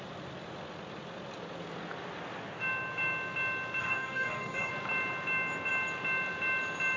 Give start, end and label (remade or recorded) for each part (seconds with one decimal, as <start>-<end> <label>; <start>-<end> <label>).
0.0-3.8 recorded; 3.8-4.7 remade; 4.7-7.0 recorded